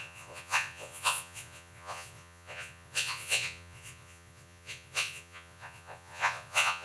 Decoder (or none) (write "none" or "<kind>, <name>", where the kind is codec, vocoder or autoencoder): vocoder, Vocos